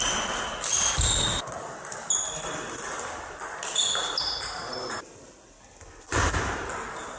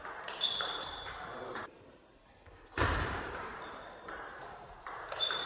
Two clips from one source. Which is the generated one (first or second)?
second